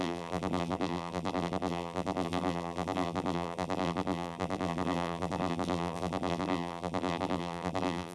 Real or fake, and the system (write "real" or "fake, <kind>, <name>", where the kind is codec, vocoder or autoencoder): fake, vocoder, BigVGAN v2